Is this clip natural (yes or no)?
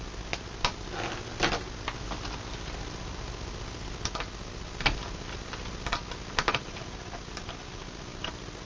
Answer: yes